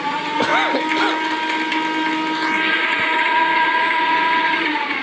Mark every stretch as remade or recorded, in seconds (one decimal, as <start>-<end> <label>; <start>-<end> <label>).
0.0-0.5 remade; 0.5-2.7 recorded; 2.7-5.0 remade